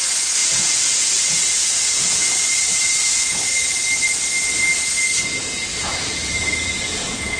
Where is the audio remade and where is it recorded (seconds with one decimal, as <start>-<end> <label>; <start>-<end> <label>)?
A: 0.0-0.4 recorded; 0.4-3.8 remade; 3.8-5.7 recorded; 5.7-7.4 remade